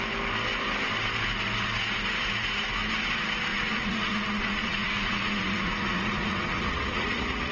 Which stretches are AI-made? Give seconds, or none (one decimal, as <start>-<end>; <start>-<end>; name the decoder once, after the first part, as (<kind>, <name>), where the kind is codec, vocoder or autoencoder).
3.5-7.5 (vocoder, Vocos)